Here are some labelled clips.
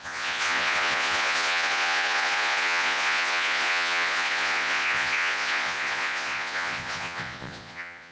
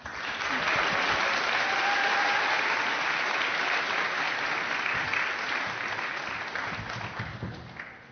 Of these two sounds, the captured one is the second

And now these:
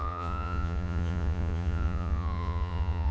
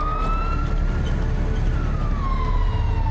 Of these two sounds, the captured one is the second